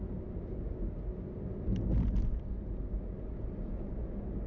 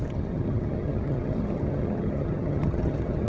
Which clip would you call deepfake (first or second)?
second